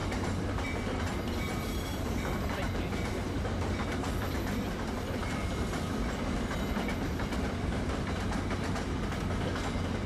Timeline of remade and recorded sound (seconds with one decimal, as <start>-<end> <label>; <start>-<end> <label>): 0.0-4.7 remade; 4.7-10.1 recorded